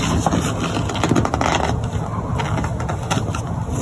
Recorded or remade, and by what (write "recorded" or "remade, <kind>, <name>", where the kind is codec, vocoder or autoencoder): recorded